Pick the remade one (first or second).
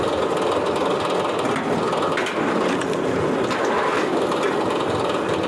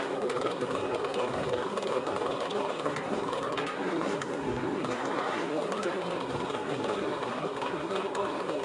second